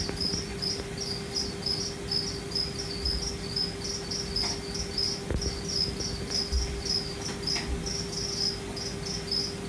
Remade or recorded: recorded